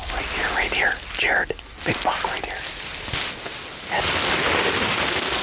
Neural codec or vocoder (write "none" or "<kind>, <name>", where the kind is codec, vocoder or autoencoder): none